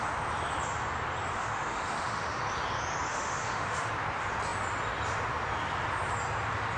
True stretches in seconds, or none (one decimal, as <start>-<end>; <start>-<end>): 0.0-1.3; 2.4-3.1; 3.9-6.8